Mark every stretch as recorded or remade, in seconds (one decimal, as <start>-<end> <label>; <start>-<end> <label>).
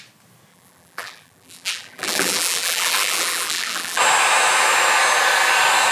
0.0-0.5 recorded; 0.5-4.0 remade; 4.0-5.9 recorded